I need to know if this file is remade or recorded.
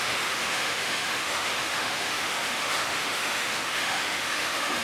remade